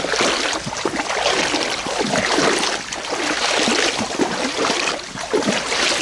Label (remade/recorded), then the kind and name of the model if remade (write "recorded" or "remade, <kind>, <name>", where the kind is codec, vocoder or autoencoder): recorded